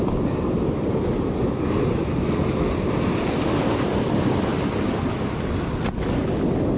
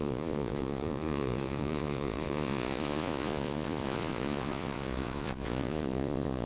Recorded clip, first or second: first